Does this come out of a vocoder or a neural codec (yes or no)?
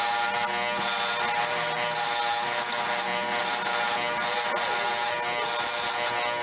no